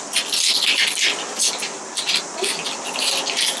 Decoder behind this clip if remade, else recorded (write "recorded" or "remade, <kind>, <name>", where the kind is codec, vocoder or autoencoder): recorded